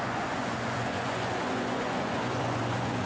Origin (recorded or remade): remade